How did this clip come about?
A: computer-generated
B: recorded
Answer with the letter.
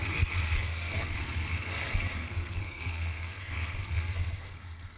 A